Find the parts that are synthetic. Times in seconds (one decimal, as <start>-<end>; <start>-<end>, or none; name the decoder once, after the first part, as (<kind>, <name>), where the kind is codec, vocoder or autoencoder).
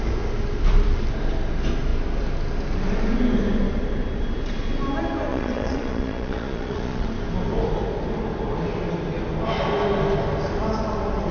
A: 5.3-7.1 (vocoder, Vocos)